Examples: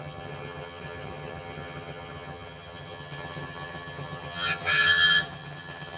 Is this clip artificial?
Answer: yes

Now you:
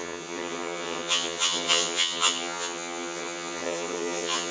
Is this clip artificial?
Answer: yes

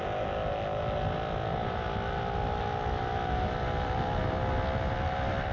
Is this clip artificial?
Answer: no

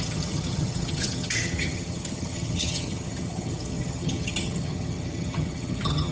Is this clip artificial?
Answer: yes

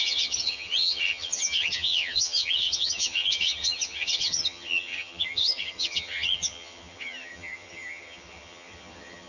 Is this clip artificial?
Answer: yes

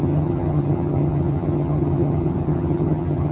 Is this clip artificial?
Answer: yes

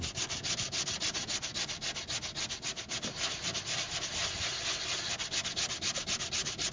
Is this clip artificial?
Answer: no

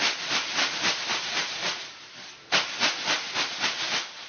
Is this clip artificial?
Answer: no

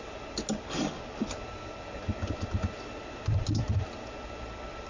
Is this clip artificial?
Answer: no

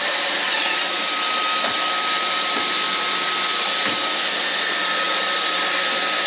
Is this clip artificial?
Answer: no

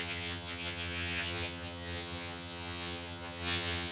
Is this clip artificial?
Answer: yes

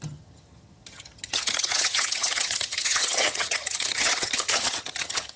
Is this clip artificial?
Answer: yes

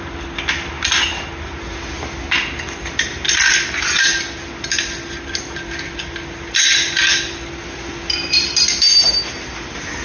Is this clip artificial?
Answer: no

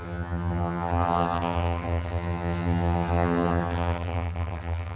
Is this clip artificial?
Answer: yes